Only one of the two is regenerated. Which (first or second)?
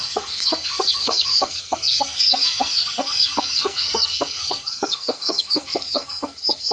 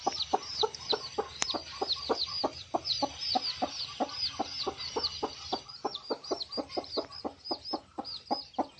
first